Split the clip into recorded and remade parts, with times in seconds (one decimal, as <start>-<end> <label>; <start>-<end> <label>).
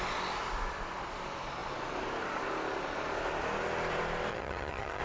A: 0.0-4.3 recorded; 4.3-5.0 remade